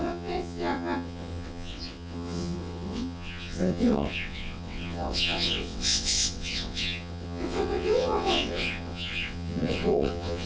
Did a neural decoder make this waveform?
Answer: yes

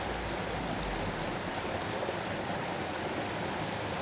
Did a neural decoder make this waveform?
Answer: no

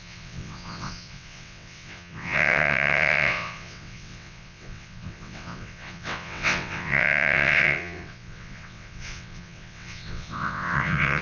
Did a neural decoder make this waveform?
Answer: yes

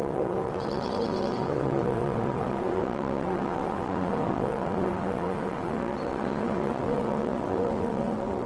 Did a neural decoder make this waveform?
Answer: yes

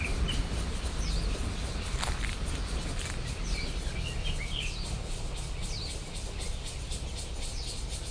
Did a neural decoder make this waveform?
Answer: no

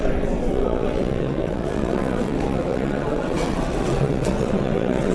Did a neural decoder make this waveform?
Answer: yes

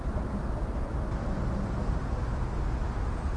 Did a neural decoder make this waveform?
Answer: no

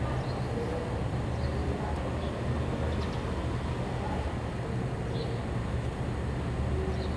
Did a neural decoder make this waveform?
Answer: no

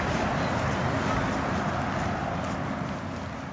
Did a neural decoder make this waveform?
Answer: no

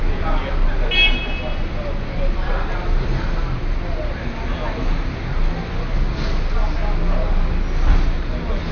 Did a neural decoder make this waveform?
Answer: no